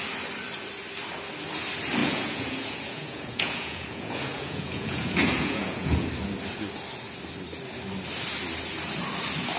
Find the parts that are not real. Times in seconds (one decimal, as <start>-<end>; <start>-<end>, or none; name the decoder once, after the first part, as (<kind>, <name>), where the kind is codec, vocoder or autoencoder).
2.0-6.1 (vocoder, Vocos)